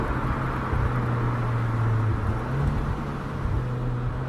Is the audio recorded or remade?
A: recorded